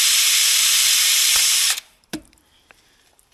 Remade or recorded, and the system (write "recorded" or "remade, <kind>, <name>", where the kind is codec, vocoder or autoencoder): remade, vocoder, BigVGAN v2